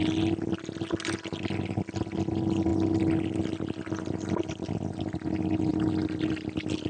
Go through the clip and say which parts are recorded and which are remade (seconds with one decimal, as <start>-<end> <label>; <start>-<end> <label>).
0.0-5.7 recorded; 5.7-6.3 remade; 6.3-6.9 recorded